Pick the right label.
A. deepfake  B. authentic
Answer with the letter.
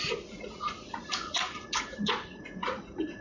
A